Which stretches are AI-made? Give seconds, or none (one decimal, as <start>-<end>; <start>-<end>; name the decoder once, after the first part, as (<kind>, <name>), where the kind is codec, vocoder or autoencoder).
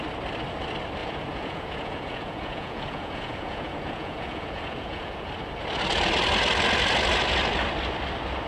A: 1.0-5.3 (vocoder, Vocos)